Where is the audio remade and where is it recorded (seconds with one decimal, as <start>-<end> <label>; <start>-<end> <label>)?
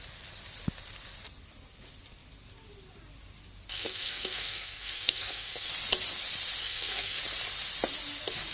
0.0-3.7 recorded; 3.7-5.7 remade; 5.7-6.6 recorded; 6.6-7.2 remade; 7.2-8.5 recorded